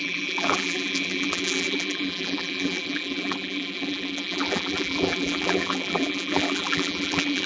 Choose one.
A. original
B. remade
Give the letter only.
B